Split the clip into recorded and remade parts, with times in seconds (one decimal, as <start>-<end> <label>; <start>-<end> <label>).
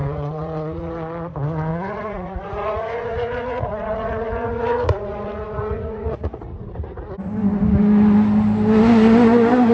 0.0-0.9 remade; 0.9-1.7 recorded; 1.7-7.0 remade; 7.0-9.7 recorded